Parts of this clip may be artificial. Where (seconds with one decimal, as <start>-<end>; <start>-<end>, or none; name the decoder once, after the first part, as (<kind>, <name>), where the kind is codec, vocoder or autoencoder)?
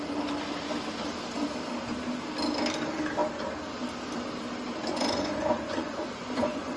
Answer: 4.9-6.8 (vocoder, Vocos)